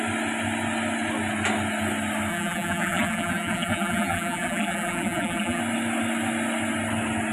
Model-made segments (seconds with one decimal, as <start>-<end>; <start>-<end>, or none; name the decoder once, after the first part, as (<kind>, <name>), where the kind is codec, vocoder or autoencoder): 2.3-5.6 (vocoder, BigVGAN v2)